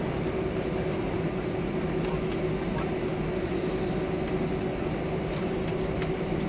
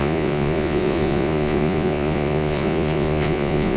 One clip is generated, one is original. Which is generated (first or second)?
second